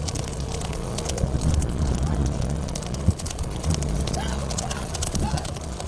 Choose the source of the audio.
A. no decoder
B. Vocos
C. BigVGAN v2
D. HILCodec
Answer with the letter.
B